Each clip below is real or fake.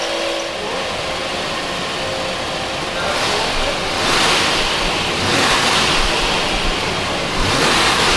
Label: real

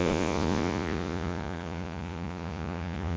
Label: fake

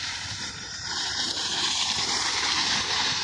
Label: fake